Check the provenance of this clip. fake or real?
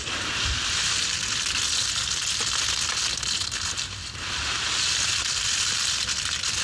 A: real